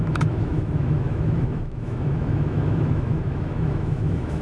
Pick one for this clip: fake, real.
fake